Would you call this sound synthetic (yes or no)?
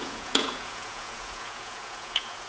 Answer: yes